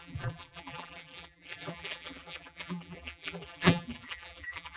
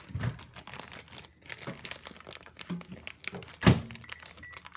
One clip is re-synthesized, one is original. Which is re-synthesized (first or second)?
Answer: first